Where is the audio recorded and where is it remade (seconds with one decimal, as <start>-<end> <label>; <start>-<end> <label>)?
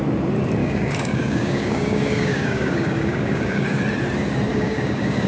0.0-0.6 recorded; 0.6-3.8 remade; 3.8-4.5 recorded; 4.5-5.3 remade